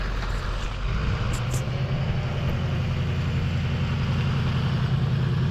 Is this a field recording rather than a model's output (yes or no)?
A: yes